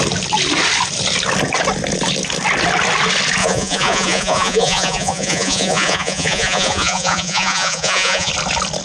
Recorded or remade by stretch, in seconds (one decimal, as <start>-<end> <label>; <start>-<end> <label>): 0.0-3.4 recorded; 3.4-8.3 remade; 8.3-8.8 recorded